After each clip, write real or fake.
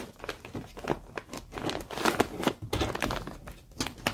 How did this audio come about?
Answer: real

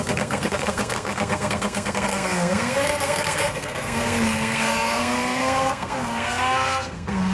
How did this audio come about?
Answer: fake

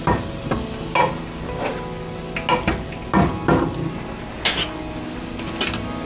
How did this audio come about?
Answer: real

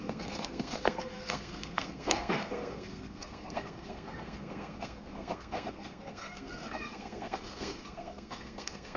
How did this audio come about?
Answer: fake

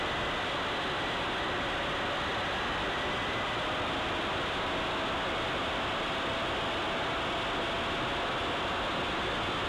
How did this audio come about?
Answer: real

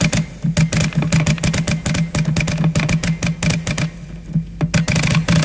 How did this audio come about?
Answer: real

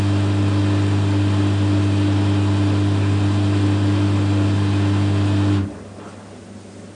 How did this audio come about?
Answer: real